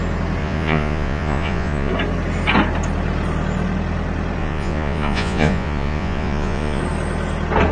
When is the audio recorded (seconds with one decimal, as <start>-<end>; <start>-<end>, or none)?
0.0-0.4; 1.9-4.4; 6.8-7.7